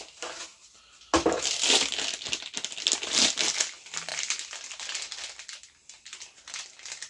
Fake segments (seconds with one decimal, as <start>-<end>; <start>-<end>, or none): none